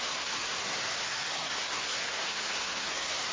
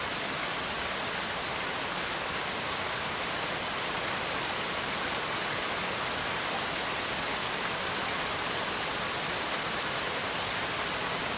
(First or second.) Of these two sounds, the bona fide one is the second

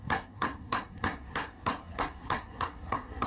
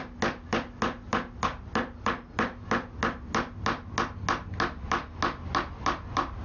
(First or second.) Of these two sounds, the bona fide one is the second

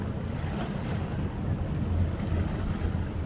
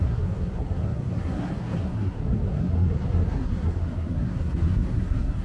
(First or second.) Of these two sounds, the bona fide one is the first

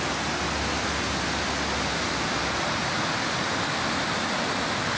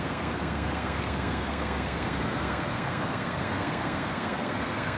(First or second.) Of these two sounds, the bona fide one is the first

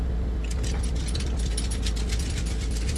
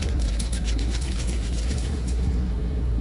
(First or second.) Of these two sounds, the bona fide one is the first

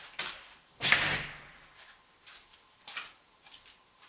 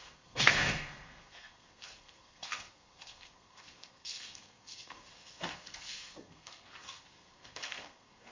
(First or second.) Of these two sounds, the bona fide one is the first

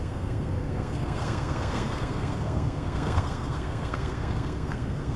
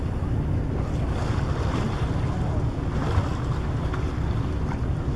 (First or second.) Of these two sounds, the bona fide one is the second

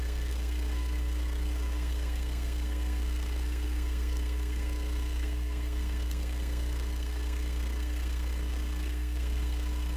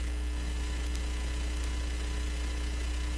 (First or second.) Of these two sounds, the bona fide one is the second